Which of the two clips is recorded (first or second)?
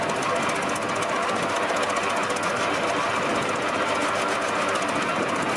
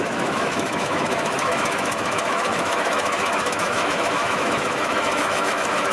first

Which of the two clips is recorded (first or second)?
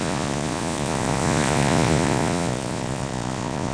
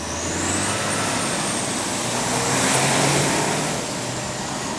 second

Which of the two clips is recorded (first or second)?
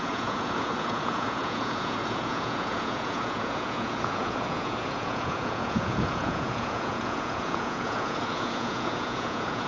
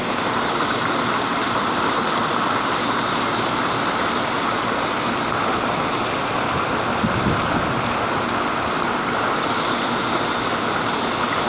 second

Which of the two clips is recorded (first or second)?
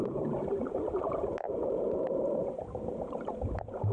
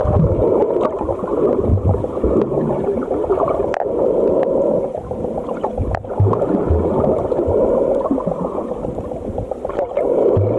second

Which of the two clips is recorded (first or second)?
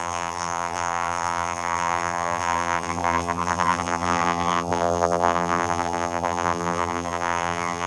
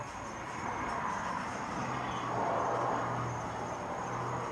second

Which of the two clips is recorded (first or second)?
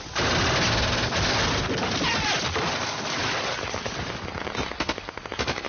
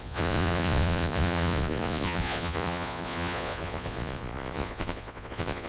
first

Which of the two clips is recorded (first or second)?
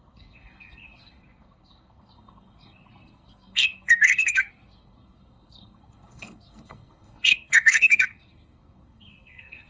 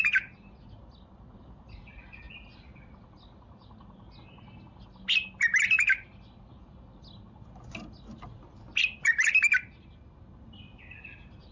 second